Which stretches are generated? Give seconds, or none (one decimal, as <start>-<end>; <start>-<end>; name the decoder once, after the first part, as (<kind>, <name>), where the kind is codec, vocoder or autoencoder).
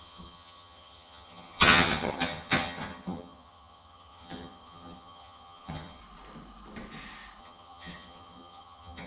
0.0-6.0 (vocoder, HiFi-GAN); 7.4-9.1